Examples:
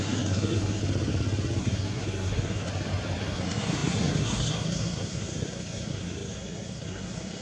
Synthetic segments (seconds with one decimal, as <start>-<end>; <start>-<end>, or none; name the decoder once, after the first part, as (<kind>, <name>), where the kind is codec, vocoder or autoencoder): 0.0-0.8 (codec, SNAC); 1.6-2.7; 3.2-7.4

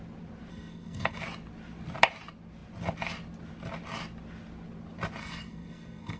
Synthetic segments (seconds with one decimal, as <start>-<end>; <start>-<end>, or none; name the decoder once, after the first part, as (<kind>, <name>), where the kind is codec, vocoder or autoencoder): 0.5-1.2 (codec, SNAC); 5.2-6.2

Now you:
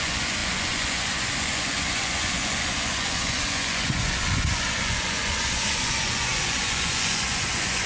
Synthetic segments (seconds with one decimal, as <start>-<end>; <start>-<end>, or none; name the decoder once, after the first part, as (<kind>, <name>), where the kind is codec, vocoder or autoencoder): 0.0-7.9 (vocoder, Vocos)

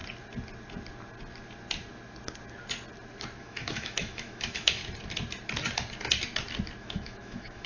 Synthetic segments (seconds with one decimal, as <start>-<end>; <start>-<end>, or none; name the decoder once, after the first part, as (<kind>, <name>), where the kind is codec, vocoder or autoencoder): 3.4-4.8 (autoencoder, DAC-VAE); 6.8-7.7